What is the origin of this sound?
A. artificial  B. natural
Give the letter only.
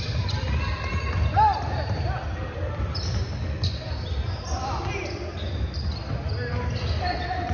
B